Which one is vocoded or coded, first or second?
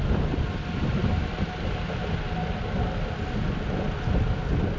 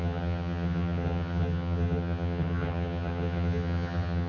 second